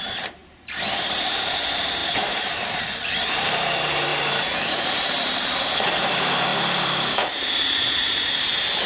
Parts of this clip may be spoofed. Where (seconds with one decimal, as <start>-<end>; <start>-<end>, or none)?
0.0-0.4; 1.0-4.1; 4.7-8.9

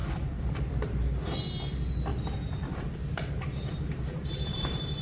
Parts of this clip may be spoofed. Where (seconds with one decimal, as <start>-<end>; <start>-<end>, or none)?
0.0-0.7; 2.1-5.0

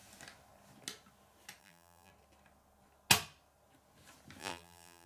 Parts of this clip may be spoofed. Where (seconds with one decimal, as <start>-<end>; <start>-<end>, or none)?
1.6-2.1; 4.4-5.1

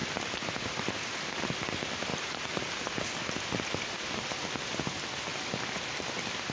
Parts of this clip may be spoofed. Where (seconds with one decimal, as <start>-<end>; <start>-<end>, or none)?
2.1-3.0

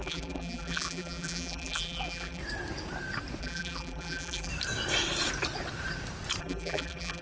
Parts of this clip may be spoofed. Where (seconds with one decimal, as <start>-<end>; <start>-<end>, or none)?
0.0-2.4; 3.4-4.5; 6.4-7.2

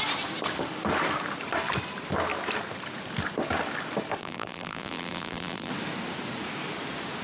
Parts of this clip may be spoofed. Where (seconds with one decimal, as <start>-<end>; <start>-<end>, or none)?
4.2-5.7